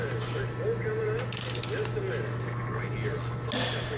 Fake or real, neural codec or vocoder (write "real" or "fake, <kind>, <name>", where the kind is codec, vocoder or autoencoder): real